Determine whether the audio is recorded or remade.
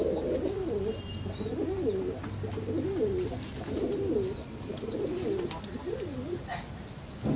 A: recorded